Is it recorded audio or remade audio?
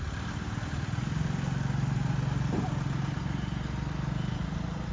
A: recorded